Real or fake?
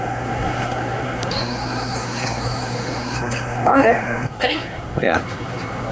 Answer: fake